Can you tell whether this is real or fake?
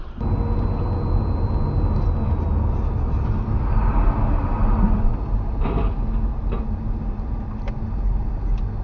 real